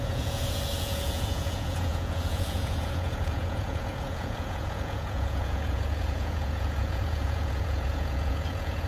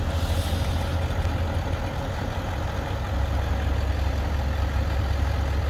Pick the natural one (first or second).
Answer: second